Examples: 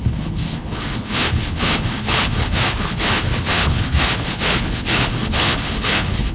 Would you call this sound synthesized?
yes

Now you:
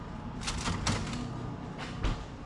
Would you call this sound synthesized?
no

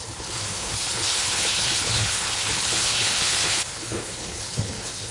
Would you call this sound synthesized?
yes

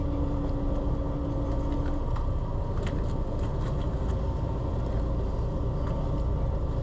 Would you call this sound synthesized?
no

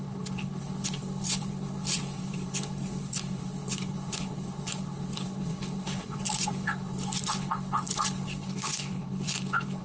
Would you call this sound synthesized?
yes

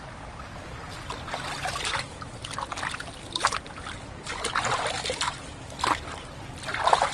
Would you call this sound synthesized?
no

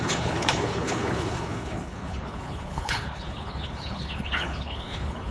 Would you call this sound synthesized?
yes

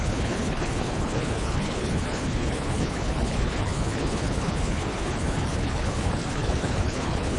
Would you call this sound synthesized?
yes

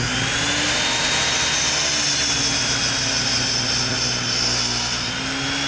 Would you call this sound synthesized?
no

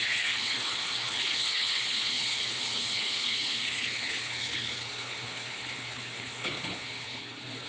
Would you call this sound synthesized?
yes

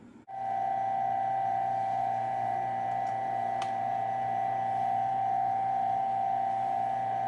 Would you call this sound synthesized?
no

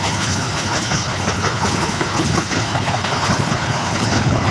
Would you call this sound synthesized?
yes